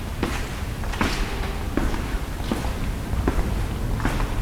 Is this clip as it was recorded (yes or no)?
yes